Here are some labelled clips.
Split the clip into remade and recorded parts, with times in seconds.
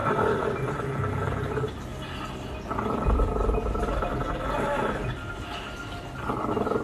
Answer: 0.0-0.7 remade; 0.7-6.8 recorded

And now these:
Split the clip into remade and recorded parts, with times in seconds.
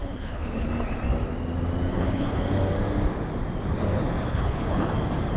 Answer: 0.0-0.7 remade; 0.7-1.9 recorded; 1.9-2.4 remade; 2.4-4.3 recorded; 4.3-4.9 remade; 4.9-5.4 recorded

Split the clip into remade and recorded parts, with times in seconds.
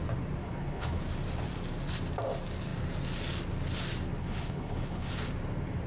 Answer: 0.0-0.4 recorded; 0.4-1.0 remade; 1.0-4.2 recorded; 4.2-5.1 remade; 5.1-5.9 recorded